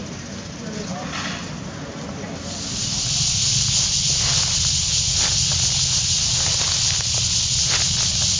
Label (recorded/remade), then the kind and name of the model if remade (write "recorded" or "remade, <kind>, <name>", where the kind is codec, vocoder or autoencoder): recorded